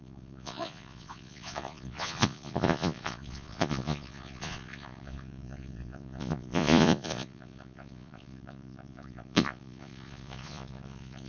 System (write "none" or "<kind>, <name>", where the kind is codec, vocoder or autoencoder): vocoder, Vocos